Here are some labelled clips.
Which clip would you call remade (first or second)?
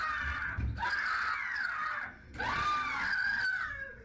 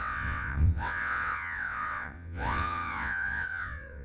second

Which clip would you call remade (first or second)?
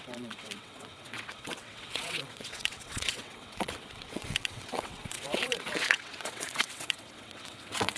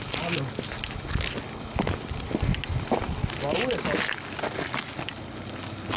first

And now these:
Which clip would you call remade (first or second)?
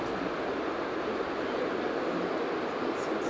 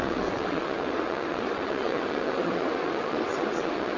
second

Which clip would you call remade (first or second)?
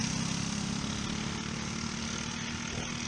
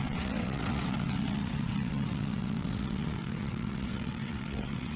second